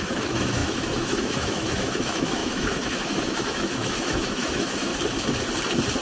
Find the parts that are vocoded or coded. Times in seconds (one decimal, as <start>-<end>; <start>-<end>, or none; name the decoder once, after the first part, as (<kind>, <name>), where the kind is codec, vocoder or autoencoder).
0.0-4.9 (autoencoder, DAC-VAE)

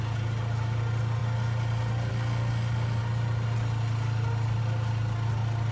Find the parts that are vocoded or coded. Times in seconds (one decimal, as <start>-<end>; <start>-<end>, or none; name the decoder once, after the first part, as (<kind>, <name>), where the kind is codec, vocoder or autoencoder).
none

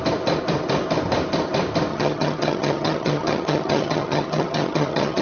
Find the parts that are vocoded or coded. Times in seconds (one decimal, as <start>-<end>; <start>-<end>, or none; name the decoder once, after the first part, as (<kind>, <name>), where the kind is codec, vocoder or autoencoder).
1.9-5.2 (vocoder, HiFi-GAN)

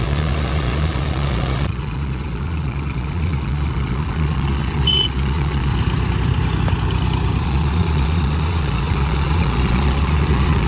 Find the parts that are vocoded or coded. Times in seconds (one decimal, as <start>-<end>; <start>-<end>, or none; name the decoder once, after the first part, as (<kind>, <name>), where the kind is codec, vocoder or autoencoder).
0.0-5.7 (vocoder, Vocos); 7.4-10.7

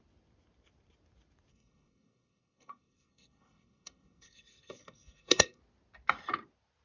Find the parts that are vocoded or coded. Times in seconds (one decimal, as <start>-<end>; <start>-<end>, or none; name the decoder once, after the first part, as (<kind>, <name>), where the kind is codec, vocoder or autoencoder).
1.5-5.6 (codec, SNAC)

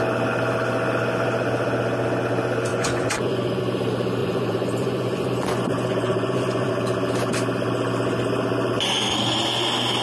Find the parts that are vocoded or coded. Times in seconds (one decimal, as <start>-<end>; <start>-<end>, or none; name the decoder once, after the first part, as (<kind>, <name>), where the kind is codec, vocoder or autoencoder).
2.7-3.6 (vocoder, Vocos); 4.2-6.7

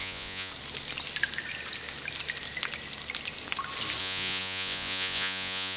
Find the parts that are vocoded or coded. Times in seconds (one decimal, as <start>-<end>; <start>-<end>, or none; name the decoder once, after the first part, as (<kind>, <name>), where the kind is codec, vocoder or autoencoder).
0.0-0.5 (vocoder, Vocos); 4.0-5.8

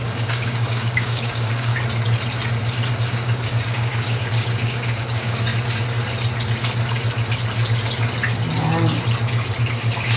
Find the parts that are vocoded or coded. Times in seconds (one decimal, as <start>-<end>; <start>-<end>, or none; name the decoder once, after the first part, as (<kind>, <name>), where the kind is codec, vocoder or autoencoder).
0.0-1.7 (codec, DAC); 2.9-5.5; 9.6-10.2